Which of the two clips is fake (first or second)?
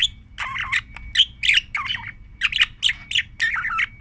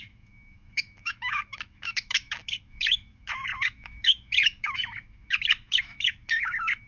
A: second